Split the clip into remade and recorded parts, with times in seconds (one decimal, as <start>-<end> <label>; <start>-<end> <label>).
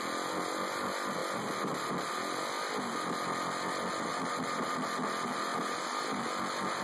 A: 0.0-4.1 recorded; 4.1-4.7 remade; 4.7-5.5 recorded; 5.5-6.2 remade; 6.2-6.8 recorded